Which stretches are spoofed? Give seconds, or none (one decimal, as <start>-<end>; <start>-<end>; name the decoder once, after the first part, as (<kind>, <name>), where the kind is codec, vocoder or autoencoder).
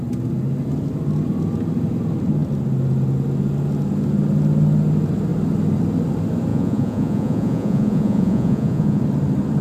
6.5-9.0 (vocoder, Vocos)